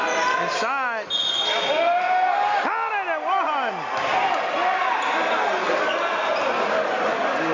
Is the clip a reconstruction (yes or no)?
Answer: no